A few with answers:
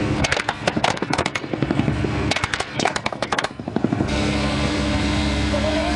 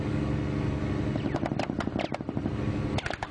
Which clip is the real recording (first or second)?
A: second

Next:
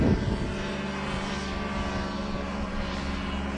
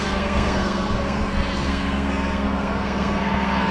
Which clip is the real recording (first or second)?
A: first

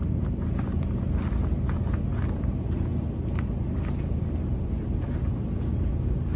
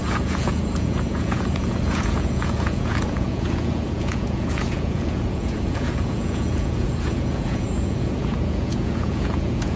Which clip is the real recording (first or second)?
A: first